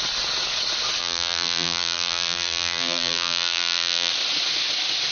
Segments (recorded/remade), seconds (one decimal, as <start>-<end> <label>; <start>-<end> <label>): 0.0-1.0 recorded; 1.0-4.1 remade; 4.1-5.1 recorded